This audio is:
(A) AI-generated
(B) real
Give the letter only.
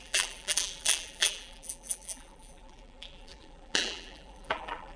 A